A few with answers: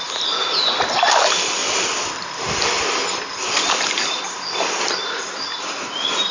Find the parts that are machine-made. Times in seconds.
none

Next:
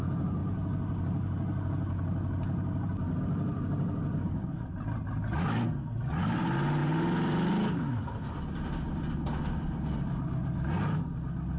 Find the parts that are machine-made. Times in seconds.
6.8-7.5 (vocoder, BigVGAN v2)

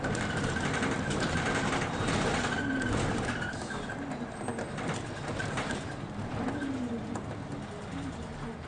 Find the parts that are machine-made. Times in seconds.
none